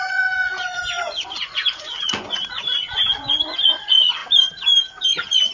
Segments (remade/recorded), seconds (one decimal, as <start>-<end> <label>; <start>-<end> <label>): 0.0-4.2 remade; 4.2-5.1 recorded; 5.1-5.5 remade